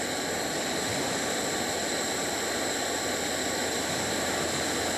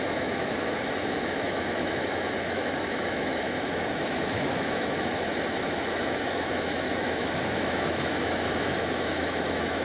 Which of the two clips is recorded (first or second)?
first